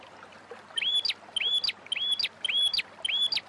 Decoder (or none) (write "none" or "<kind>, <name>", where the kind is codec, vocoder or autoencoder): none